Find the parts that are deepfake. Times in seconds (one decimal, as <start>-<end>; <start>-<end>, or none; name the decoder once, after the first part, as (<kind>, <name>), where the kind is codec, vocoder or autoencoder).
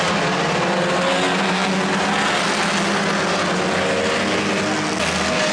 none